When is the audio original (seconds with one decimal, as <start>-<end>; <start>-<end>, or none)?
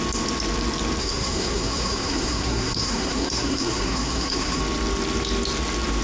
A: 0.0-1.0; 4.6-6.0